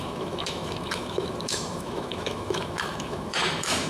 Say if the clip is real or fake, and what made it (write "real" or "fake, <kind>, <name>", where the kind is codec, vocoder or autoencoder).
fake, autoencoder, DAC-VAE